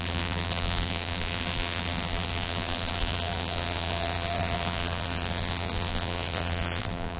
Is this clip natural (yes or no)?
no